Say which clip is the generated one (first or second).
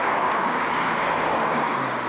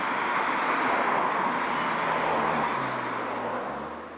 first